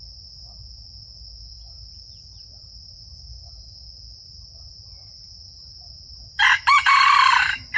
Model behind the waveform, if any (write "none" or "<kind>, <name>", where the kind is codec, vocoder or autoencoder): vocoder, BigVGAN v2